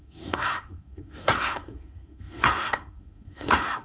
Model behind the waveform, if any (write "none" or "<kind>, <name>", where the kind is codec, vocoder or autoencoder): codec, SNAC